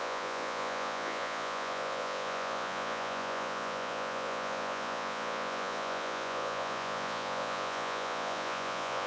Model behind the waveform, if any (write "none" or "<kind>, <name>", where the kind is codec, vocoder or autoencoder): vocoder, Vocos